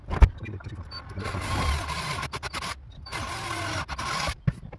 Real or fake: real